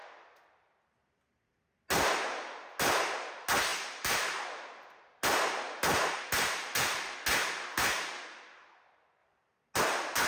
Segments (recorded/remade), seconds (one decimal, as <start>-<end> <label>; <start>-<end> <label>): 0.0-10.3 recorded